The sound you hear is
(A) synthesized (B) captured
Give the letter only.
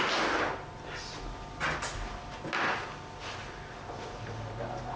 B